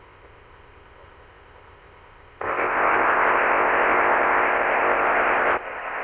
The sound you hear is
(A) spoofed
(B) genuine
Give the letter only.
A